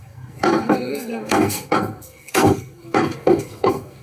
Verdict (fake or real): fake